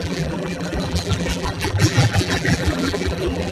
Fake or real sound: fake